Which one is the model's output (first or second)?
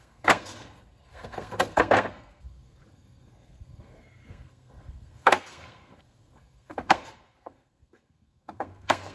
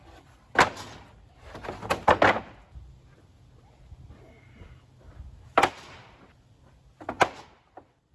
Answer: first